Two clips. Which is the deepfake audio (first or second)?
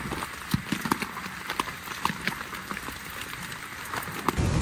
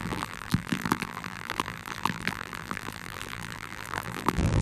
second